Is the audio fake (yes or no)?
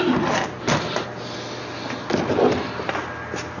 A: no